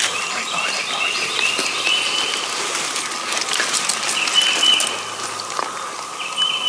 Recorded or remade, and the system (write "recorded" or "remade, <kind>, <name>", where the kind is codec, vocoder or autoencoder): recorded